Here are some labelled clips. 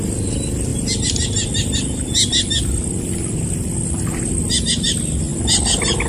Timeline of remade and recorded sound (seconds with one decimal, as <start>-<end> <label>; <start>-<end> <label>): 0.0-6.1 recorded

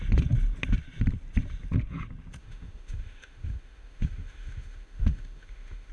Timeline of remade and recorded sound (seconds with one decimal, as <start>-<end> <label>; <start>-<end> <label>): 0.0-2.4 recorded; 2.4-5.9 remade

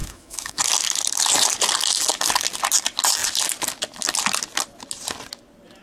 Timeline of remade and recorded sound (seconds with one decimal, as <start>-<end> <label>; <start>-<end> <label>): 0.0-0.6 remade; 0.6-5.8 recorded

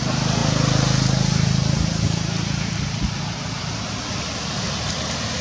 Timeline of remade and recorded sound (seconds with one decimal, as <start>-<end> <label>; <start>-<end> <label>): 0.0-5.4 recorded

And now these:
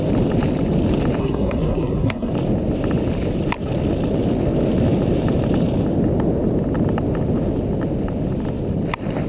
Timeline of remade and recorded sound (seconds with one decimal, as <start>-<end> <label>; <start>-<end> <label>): 0.0-1.2 recorded; 1.2-2.3 remade; 2.3-9.3 recorded

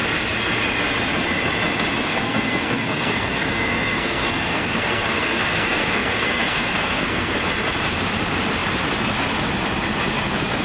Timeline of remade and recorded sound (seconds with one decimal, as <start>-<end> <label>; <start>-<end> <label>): 0.0-2.1 recorded; 2.1-7.4 remade; 7.4-10.6 recorded

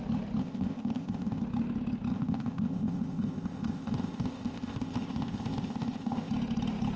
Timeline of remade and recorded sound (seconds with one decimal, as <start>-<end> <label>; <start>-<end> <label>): 0.0-0.4 recorded; 0.4-1.4 remade; 1.4-2.1 recorded; 2.1-6.3 remade; 6.3-7.0 recorded